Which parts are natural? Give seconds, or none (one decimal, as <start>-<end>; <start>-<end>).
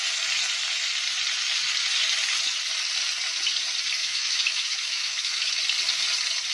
0.0-4.0; 5.5-6.5